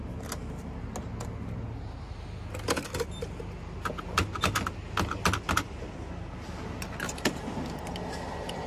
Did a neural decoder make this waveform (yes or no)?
no